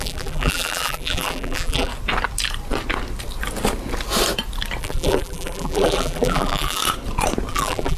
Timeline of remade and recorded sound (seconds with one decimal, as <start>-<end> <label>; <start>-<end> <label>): 0.0-1.9 remade; 1.9-4.8 recorded; 4.8-6.8 remade; 6.8-7.5 recorded; 7.5-8.0 remade